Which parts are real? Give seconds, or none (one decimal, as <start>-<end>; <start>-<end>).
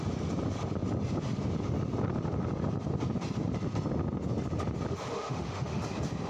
0.0-5.1; 5.8-6.3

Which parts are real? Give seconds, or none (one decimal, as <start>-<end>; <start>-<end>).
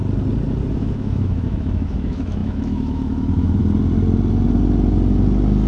0.0-0.7; 3.6-5.7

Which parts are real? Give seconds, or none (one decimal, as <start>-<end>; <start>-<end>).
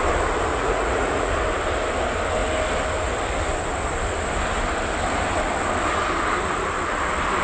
0.0-0.5; 1.3-7.4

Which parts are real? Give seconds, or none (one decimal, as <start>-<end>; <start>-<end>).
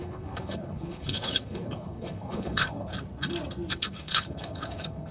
2.9-3.7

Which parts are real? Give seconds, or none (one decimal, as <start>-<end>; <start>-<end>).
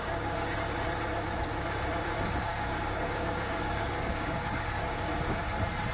0.5-2.5; 5.4-5.9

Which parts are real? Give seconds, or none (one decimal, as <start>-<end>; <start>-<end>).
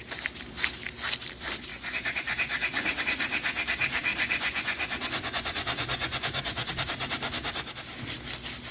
0.0-1.7; 3.0-4.1; 6.7-8.7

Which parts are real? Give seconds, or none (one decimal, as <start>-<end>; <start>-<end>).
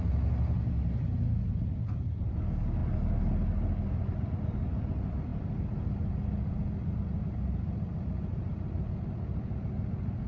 0.0-2.8; 4.3-10.3